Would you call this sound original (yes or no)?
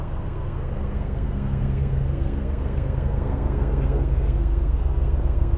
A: no